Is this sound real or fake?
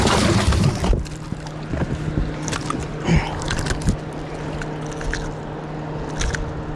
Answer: real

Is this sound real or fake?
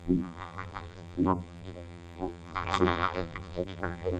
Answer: fake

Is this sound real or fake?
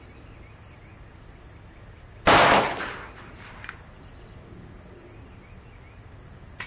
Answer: real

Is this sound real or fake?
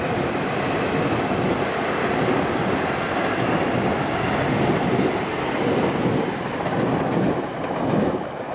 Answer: real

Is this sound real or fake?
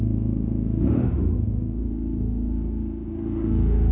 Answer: fake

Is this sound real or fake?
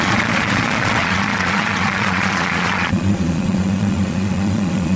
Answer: fake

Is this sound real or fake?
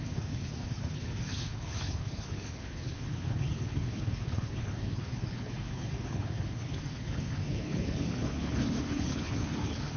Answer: fake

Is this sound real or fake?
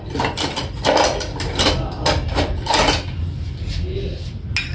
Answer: real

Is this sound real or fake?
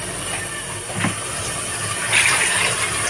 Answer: real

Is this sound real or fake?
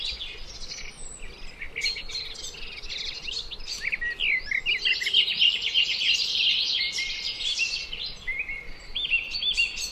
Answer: real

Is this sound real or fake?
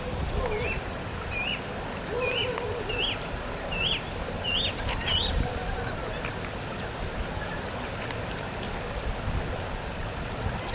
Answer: real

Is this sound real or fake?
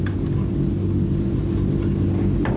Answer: real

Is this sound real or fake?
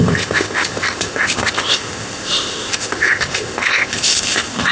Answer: fake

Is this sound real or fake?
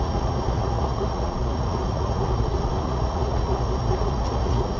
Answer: fake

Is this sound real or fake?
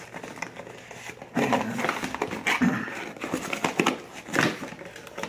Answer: real